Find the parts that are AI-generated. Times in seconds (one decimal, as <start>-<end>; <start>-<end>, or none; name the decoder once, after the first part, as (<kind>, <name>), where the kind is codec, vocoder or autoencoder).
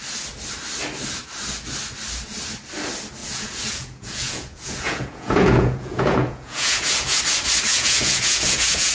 3.2-7.2 (vocoder, Vocos); 7.7-8.9